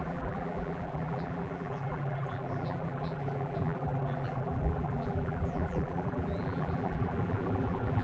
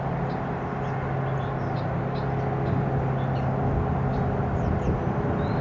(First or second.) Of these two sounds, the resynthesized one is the first